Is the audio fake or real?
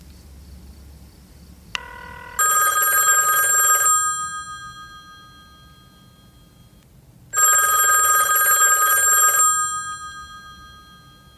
real